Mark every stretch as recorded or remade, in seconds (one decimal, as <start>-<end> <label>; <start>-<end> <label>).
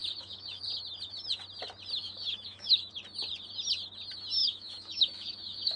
0.0-0.6 remade; 0.6-2.0 recorded; 2.0-3.0 remade; 3.0-4.4 recorded; 4.4-5.8 remade